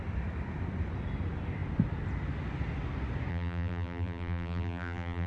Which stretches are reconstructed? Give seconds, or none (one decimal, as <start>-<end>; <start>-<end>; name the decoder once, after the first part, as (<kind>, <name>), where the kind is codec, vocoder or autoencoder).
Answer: 3.3-5.3 (vocoder, BigVGAN v2)